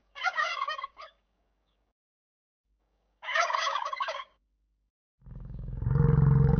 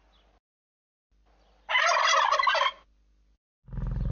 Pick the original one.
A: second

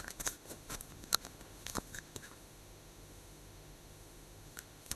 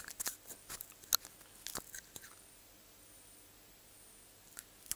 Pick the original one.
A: second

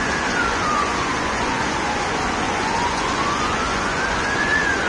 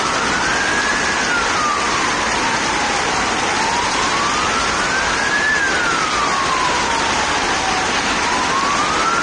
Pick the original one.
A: second